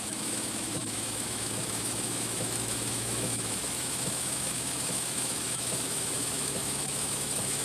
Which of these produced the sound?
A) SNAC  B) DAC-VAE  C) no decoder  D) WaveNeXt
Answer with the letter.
B